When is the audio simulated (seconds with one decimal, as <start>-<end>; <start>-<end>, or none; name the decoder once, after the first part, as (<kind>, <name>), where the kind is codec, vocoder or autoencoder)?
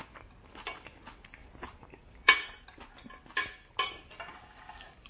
1.4-2.3 (vocoder, BigVGAN v2)